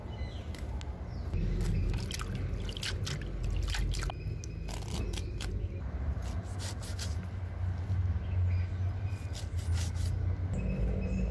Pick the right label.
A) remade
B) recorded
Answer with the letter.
B